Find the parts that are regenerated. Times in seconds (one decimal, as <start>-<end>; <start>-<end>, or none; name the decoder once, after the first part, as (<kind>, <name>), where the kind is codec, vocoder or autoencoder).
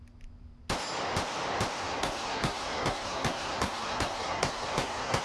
1.8-5.2 (codec, SNAC)